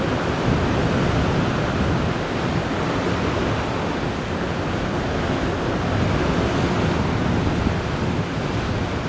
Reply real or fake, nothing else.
real